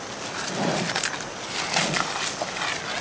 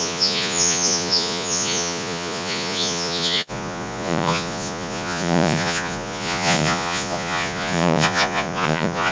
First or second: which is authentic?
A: first